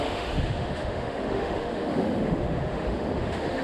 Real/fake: fake